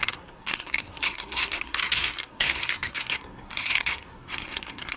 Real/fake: fake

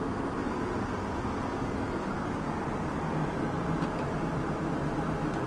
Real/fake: real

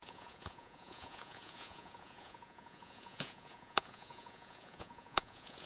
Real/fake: fake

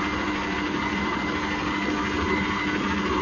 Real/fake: real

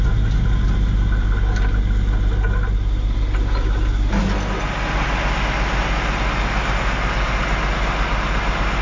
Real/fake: real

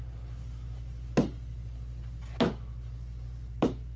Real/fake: real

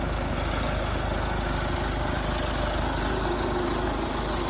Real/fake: real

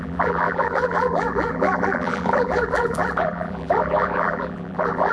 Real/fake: fake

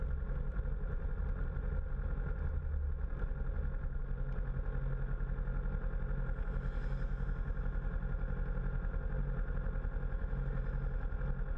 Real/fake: real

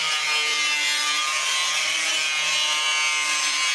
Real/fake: real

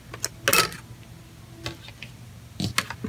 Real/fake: real